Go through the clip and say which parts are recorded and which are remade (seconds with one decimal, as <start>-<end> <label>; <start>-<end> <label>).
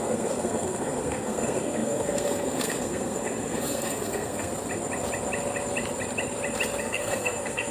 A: 0.0-4.5 remade; 4.5-6.8 recorded; 6.8-7.7 remade